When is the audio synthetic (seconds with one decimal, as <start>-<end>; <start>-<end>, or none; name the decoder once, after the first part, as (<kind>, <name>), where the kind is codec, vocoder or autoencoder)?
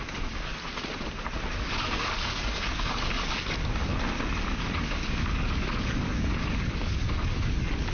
0.0-0.5 (codec, DAC); 1.6-3.9; 4.4-7.9